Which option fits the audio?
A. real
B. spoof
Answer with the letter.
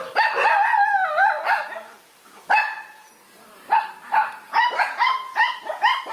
A